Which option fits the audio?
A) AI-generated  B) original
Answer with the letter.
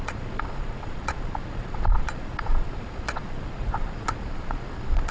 A